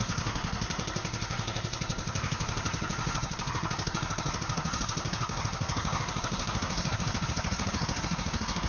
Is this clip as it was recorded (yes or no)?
no